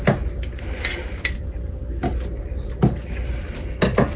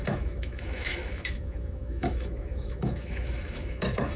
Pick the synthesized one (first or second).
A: second